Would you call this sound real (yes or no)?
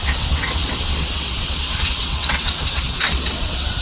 no